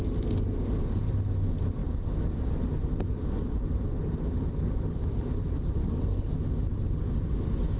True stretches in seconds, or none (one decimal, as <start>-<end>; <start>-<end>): 0.0-5.8; 6.3-7.8